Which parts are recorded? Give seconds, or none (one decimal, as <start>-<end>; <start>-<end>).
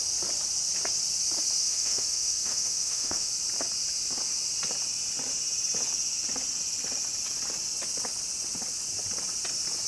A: 0.0-1.6; 3.3-9.9